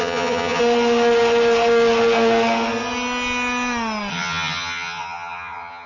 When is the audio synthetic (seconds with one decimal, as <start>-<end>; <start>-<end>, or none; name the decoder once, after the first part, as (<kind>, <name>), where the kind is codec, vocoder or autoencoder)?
0.0-0.6 (vocoder, HiFi-GAN); 4.1-5.9

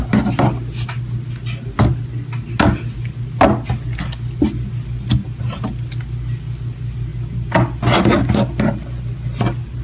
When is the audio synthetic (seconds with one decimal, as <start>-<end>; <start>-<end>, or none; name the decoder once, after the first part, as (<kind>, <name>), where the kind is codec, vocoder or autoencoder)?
none

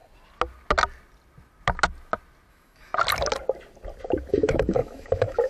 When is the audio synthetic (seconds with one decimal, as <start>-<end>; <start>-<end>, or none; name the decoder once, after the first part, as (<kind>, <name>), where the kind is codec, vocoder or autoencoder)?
2.5-2.9 (autoencoder, DAC-VAE); 4.3-5.5